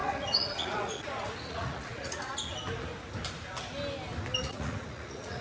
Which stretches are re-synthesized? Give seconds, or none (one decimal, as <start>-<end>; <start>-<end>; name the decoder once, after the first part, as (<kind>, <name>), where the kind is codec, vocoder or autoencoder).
0.0-2.3 (vocoder, Vocos); 4.4-5.4